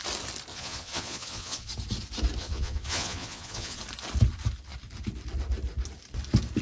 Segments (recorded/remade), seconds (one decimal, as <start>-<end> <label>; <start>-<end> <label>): 0.0-0.5 recorded; 0.5-1.7 remade; 1.7-2.4 recorded; 2.4-3.8 remade; 3.8-6.6 recorded